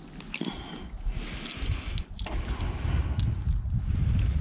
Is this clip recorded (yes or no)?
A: yes